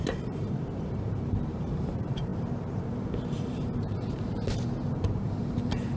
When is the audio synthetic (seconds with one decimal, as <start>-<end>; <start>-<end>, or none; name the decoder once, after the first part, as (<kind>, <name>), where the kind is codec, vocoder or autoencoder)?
0.0-6.0 (vocoder, BigVGAN v2)